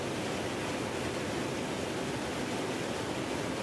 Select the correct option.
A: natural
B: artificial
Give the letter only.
A